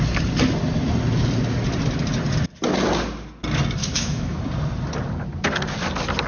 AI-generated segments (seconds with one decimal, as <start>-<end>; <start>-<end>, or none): 3.8-4.4